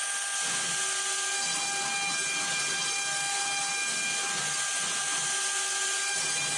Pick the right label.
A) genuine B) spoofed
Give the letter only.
A